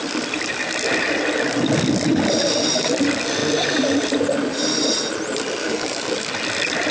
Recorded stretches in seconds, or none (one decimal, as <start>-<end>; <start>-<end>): 0.0-5.6; 6.3-6.9